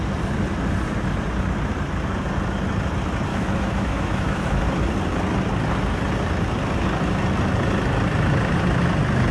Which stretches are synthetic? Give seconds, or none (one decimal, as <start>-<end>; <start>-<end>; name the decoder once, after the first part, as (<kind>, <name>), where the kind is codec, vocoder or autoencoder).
3.3-4.6 (autoencoder, DAC-VAE)